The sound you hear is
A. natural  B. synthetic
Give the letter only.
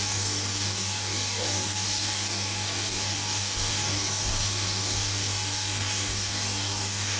B